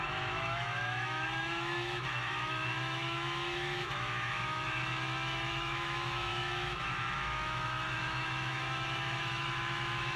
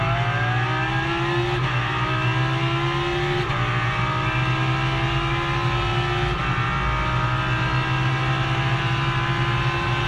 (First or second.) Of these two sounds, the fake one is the first